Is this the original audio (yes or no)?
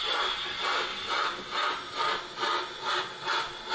yes